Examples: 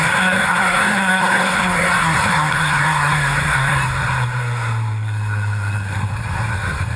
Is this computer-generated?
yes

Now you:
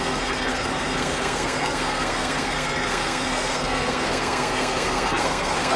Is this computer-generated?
yes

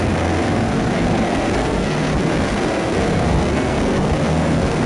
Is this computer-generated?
yes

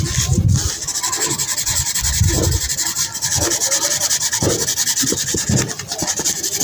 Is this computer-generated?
no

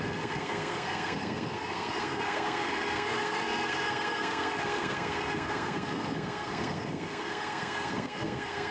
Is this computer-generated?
yes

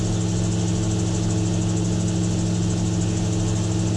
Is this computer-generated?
no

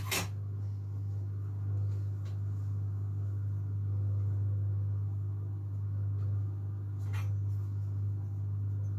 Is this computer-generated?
no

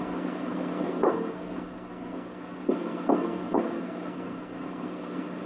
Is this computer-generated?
yes